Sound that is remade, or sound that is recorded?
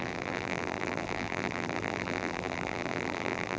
remade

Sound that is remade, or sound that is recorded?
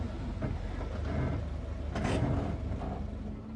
recorded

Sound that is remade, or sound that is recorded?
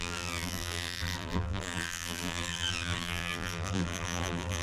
remade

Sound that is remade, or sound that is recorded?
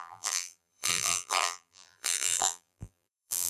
remade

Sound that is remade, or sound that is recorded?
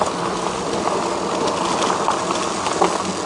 recorded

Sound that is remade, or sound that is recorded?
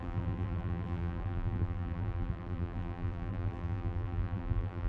remade